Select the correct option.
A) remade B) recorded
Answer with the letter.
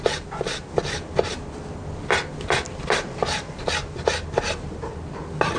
B